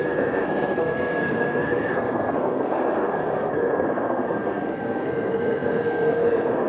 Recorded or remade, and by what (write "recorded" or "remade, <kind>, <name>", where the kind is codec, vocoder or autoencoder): remade, codec, SNAC